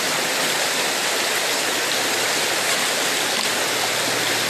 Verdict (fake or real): real